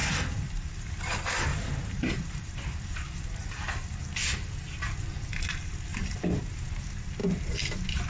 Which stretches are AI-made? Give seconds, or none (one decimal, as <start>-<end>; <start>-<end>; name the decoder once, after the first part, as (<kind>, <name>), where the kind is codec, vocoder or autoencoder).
0.0-1.1 (vocoder, BigVGAN v2); 1.5-4.0; 5.9-6.8